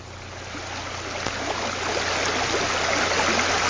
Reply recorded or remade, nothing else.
recorded